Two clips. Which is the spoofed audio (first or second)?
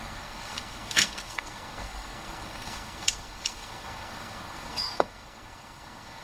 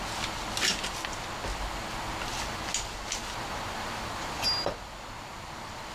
first